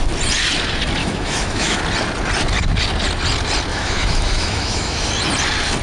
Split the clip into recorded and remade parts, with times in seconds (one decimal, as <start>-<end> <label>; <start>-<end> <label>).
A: 0.0-1.0 recorded; 1.0-1.8 remade; 1.8-3.7 recorded; 3.7-5.1 remade; 5.1-5.8 recorded